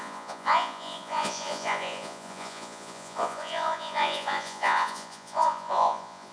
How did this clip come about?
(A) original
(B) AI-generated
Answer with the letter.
B